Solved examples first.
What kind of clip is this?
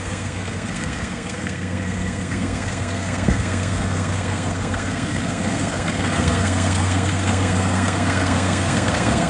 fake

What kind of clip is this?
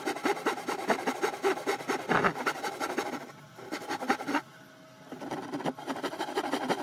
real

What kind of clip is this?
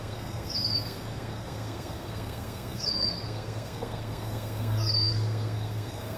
fake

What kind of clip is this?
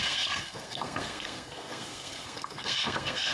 fake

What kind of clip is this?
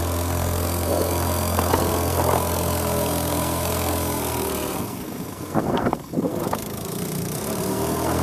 fake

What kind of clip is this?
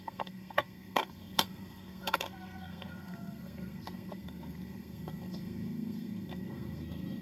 fake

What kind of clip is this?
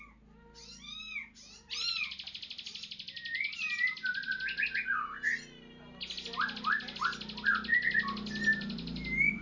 real